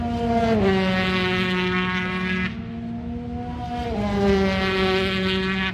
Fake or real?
real